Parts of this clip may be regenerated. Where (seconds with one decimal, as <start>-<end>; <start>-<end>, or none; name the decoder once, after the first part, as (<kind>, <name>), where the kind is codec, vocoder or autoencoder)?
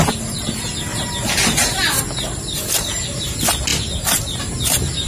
none